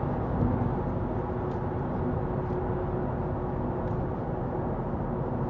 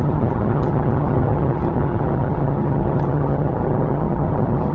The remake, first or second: second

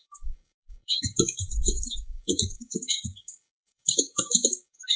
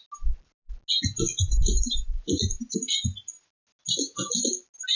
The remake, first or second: first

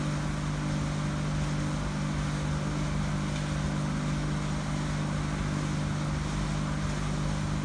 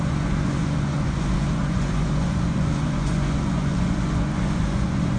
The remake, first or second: second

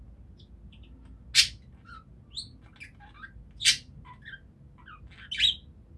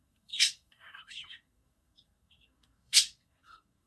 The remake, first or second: second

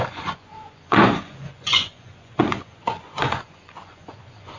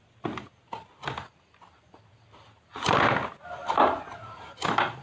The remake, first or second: first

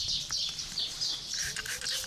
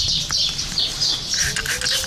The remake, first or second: first